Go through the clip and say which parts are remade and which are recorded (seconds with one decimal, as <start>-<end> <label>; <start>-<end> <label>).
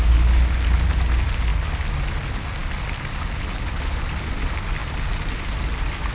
0.0-6.1 recorded